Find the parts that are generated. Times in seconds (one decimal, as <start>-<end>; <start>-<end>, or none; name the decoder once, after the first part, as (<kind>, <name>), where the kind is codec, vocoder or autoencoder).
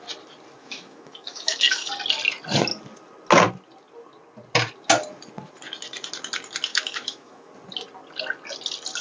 0.6-1.9 (autoencoder, DAC-VAE); 6.7-7.5